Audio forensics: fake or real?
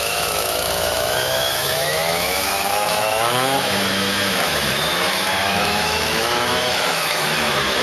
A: fake